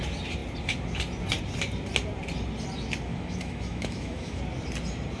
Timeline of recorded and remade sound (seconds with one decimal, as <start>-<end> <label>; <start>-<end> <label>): 0.0-3.1 recorded; 3.1-4.4 remade; 4.4-5.2 recorded